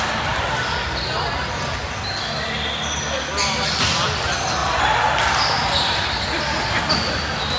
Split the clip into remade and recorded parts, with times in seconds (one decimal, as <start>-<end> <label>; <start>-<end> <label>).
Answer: 0.0-4.6 recorded; 4.6-6.8 remade; 6.8-7.6 recorded